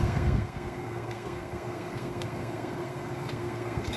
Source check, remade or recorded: remade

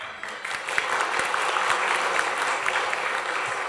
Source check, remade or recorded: recorded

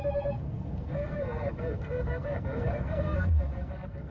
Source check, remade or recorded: remade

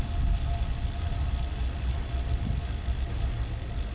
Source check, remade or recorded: recorded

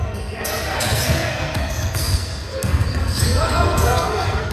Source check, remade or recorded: remade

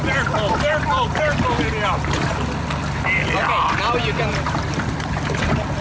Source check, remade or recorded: recorded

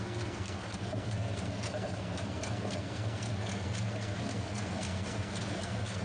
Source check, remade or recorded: remade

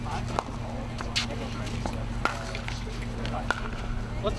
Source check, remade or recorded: recorded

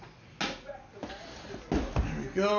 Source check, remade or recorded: recorded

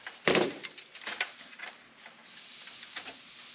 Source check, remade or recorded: recorded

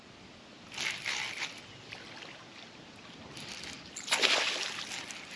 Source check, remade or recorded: recorded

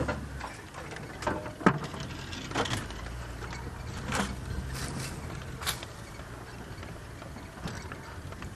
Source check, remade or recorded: recorded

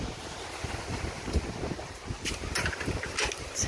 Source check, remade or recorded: recorded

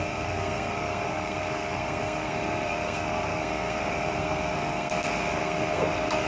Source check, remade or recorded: remade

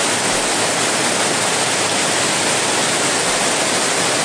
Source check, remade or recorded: recorded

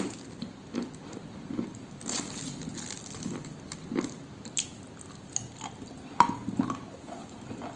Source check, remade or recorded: recorded